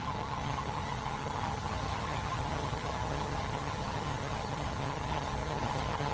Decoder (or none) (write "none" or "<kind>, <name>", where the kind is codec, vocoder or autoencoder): vocoder, HiFi-GAN